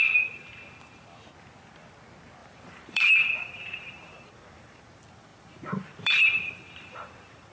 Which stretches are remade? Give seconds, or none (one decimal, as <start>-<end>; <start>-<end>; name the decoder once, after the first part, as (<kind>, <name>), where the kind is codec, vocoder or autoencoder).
2.4-4.8 (vocoder, BigVGAN v2); 5.3-7.5